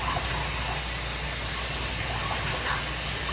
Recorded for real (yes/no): yes